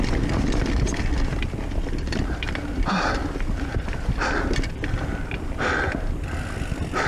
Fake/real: real